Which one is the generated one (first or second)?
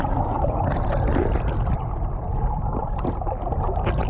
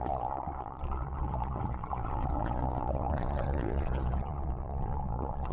second